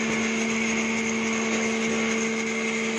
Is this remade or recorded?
recorded